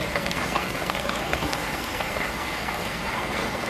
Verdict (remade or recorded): remade